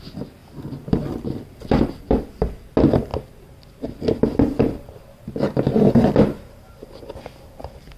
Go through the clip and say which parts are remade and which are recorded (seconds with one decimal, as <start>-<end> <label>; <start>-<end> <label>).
0.0-0.4 recorded; 0.4-2.2 remade; 2.2-8.0 recorded